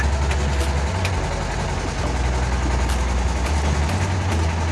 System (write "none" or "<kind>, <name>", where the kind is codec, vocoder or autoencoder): none